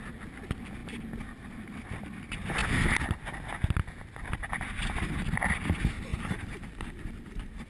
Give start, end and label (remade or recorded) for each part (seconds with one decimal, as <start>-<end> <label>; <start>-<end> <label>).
0.0-6.1 recorded; 6.1-7.7 remade